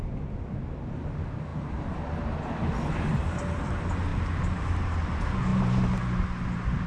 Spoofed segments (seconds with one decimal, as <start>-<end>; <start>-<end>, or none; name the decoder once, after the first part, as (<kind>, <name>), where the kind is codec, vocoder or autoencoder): none